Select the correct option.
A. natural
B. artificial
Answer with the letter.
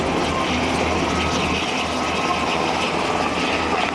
A